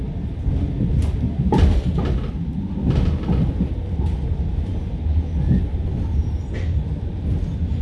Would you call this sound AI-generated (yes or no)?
no